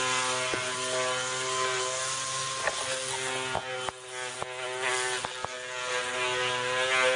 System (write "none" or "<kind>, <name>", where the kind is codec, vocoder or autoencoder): none